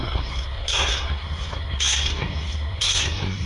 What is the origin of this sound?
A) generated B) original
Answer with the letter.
A